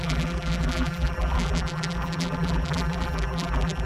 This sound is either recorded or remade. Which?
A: remade